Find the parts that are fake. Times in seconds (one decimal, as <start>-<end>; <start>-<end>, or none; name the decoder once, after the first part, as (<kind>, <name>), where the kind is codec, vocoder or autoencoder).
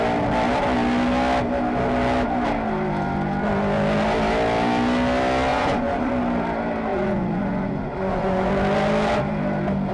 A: 5.5-6.1 (vocoder, Vocos); 6.9-8.5